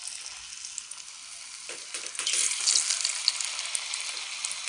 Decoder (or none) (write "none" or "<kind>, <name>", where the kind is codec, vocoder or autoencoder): none